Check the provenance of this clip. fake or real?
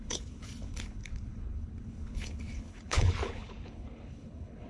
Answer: fake